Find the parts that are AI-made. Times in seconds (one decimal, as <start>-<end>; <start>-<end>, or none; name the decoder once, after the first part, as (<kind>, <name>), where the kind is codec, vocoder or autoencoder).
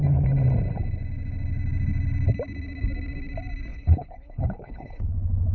3.7-5.1 (codec, HILCodec)